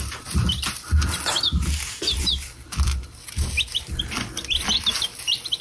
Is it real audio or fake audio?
real